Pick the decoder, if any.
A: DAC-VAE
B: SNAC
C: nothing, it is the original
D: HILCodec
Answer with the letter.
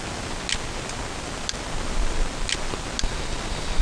C